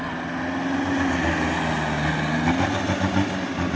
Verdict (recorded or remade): recorded